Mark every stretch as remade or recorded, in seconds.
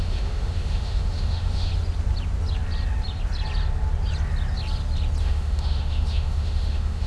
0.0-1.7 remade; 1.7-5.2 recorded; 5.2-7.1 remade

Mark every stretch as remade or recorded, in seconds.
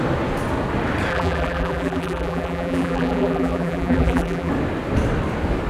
0.0-1.1 recorded; 1.1-4.5 remade; 4.5-5.7 recorded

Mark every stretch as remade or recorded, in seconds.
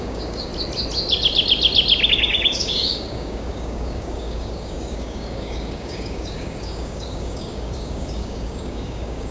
0.0-0.5 remade; 0.5-2.1 recorded; 2.1-9.3 remade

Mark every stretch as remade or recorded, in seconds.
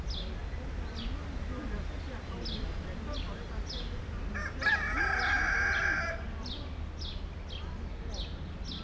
0.0-8.8 recorded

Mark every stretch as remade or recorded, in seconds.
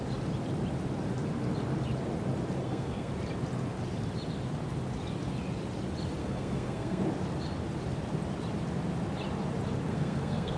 0.0-2.6 recorded; 2.6-3.1 remade; 3.1-6.2 recorded; 6.2-7.0 remade; 7.0-9.9 recorded; 9.9-10.6 remade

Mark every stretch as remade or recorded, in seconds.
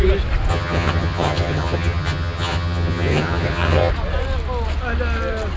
0.0-0.5 recorded; 0.5-3.9 remade; 3.9-5.6 recorded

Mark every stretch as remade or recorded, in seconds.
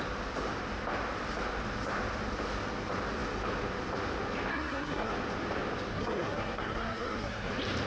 0.0-4.5 recorded; 4.5-5.1 remade; 5.1-5.9 recorded; 5.9-7.5 remade; 7.5-7.9 recorded